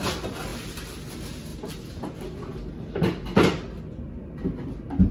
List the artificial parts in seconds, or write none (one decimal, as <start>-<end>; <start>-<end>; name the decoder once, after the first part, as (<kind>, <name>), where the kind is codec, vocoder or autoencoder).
0.5-1.1 (vocoder, BigVGAN v2); 2.5-3.8